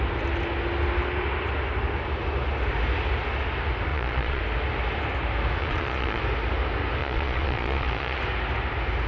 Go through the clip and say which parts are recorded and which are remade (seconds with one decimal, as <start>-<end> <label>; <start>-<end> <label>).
0.0-3.9 recorded; 3.9-4.4 remade; 4.4-5.6 recorded; 5.6-6.2 remade; 6.2-7.0 recorded; 7.0-8.2 remade; 8.2-9.1 recorded